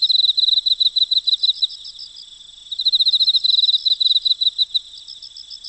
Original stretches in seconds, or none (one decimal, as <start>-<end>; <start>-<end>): 0.0-5.7